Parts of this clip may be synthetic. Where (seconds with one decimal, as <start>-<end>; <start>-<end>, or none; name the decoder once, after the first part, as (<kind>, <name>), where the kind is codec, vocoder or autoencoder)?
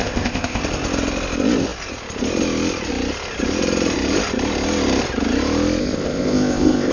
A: 0.0-0.6 (codec, ZipCodec); 5.8-6.9